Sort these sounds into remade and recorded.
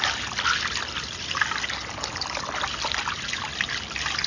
recorded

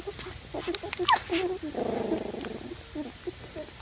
recorded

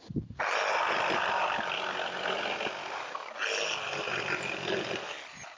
recorded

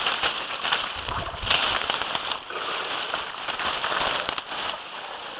recorded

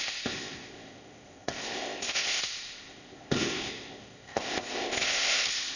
remade